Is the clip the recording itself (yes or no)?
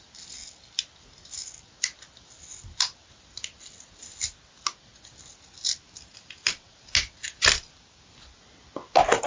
yes